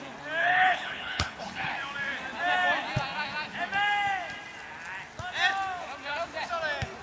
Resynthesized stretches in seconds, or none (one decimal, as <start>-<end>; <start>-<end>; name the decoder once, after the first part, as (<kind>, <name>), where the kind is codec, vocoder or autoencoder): 0.4-1.7 (codec, HILCodec)